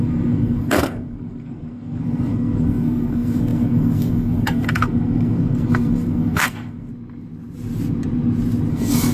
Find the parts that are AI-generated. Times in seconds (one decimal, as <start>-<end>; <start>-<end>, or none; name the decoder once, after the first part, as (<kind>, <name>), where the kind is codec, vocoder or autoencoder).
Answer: 0.0-6.9 (codec, SNAC); 8.7-9.1